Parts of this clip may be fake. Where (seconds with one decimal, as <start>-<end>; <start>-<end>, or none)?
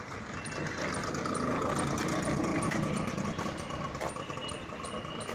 none